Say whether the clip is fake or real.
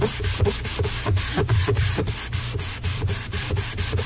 fake